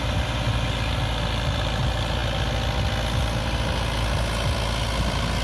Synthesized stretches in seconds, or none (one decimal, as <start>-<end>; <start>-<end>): none